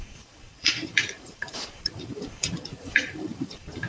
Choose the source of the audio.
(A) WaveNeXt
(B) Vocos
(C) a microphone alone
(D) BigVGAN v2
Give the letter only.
D